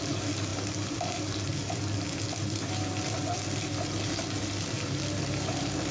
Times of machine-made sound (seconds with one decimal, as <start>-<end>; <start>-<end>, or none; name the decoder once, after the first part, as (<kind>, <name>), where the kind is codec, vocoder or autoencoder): none